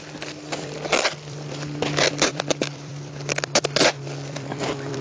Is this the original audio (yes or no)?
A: no